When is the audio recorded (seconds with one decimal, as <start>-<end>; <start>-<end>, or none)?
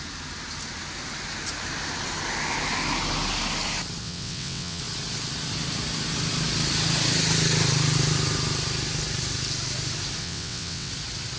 0.0-4.0; 4.8-10.2; 10.9-11.4